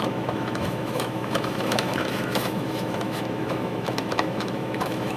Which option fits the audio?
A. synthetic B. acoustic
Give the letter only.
A